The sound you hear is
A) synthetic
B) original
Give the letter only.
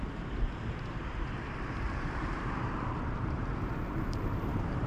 A